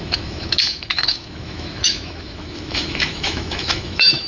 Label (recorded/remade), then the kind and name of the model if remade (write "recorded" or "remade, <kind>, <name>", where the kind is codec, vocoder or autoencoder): remade, autoencoder, DAC-VAE